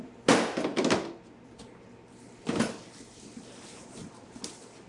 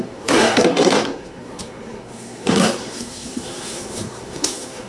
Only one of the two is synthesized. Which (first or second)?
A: second